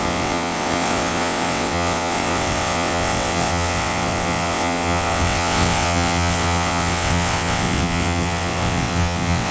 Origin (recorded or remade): remade